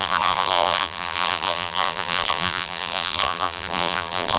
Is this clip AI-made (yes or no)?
yes